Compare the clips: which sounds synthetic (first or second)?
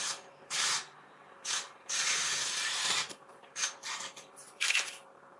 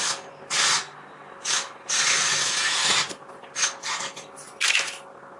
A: first